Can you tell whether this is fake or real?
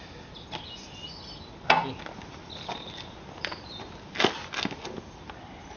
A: real